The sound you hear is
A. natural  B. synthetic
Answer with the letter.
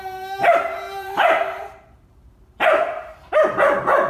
B